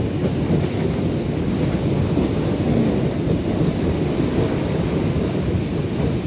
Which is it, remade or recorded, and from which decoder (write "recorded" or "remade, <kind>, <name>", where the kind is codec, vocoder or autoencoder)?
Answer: recorded